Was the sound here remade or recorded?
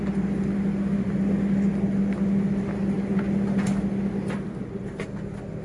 recorded